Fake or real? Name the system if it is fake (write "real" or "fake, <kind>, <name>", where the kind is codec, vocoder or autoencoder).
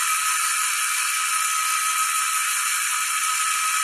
real